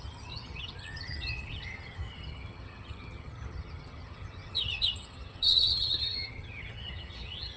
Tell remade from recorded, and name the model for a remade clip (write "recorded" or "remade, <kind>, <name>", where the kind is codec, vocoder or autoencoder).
remade, vocoder, HiFi-GAN